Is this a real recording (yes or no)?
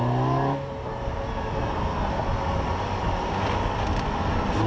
yes